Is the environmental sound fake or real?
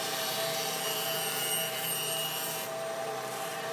fake